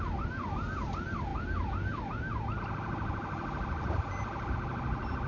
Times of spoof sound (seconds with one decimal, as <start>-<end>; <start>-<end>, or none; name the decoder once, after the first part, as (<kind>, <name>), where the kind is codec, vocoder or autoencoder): none